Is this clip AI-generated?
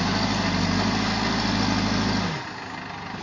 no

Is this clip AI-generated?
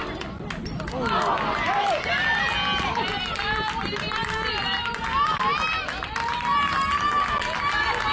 no